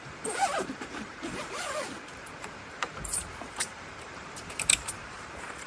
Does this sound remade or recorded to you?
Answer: remade